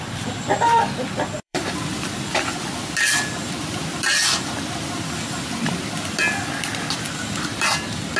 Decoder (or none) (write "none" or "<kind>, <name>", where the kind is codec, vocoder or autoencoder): vocoder, BigVGAN v2